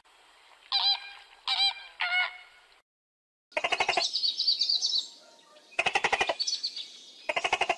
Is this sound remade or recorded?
recorded